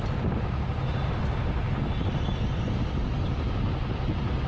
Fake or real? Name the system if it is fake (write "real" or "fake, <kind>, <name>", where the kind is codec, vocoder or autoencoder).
real